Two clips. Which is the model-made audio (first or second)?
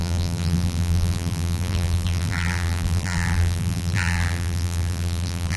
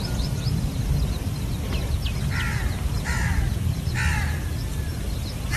first